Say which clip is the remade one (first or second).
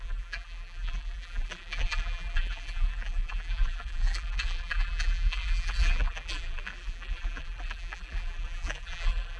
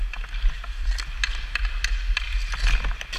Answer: first